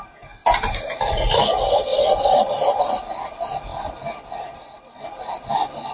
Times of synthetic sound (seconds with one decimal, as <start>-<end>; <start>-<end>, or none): 0.4-1.3; 1.9-2.8